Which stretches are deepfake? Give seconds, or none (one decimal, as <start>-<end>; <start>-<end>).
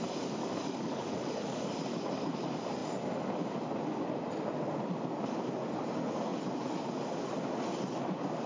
0.4-1.7